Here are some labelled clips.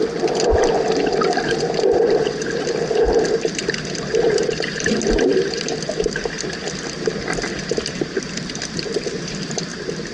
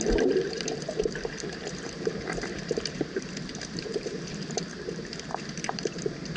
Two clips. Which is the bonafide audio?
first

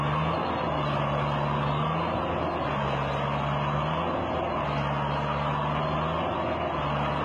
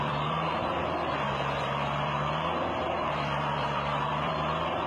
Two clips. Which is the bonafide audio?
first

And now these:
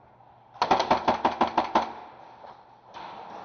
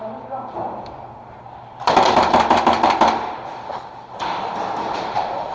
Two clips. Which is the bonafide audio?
first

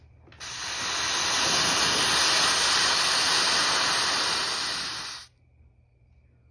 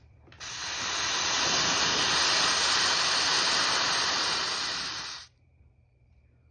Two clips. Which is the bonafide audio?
first